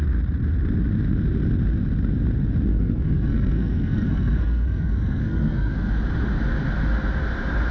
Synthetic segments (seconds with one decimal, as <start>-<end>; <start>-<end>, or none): 2.7-5.9